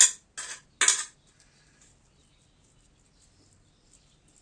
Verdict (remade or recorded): recorded